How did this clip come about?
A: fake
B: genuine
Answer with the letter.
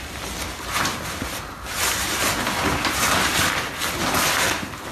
B